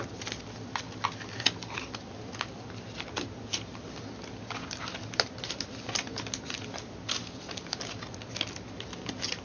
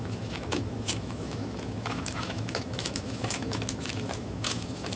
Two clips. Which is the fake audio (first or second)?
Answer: second